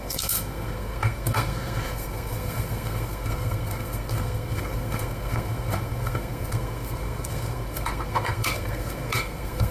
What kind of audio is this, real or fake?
fake